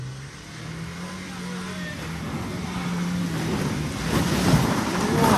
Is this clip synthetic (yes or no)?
no